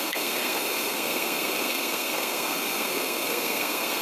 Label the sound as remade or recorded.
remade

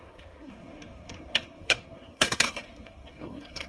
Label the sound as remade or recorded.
remade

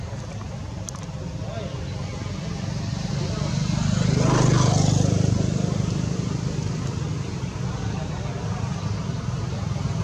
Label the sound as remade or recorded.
recorded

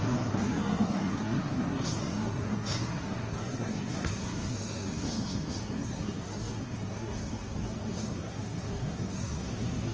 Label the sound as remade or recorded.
remade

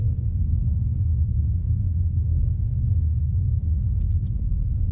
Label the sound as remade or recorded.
remade